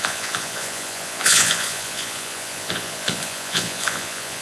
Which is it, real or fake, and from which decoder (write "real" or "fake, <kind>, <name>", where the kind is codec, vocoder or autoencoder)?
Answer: fake, vocoder, Vocos